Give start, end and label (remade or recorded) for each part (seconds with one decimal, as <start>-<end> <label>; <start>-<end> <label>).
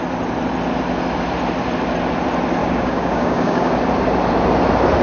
0.0-2.6 recorded; 2.6-3.7 remade; 3.7-5.0 recorded